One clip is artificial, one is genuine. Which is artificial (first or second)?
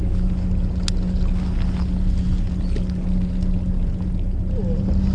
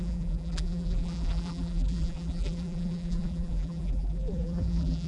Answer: second